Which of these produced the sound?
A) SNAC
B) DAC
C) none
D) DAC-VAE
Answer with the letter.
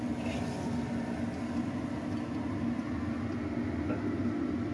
C